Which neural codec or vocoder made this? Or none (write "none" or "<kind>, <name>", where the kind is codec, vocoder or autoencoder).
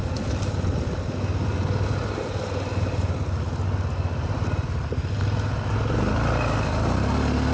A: none